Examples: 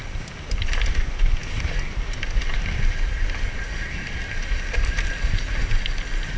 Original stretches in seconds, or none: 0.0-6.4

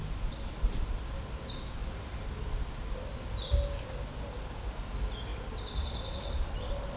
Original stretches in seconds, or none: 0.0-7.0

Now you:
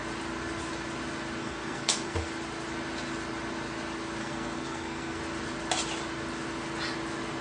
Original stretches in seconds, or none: 0.0-1.4; 2.3-4.2; 5.2-7.4

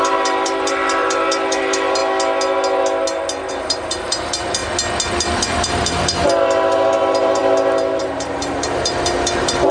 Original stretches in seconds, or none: 2.0-3.5; 4.6-5.1; 7.4-8.0